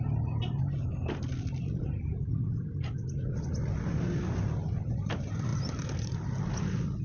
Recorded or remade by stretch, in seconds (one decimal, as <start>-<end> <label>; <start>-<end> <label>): 0.0-7.0 recorded